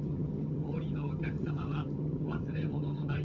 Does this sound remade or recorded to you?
remade